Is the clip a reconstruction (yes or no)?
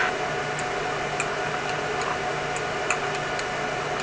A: no